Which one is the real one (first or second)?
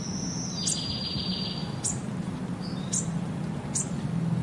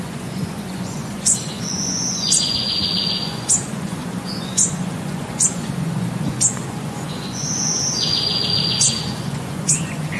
first